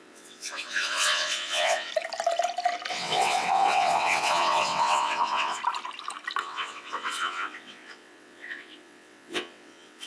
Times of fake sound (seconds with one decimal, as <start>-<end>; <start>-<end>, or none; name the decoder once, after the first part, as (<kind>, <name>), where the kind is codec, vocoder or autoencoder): 0.0-1.9 (vocoder, WaveNeXt); 2.9-5.6; 6.4-10.1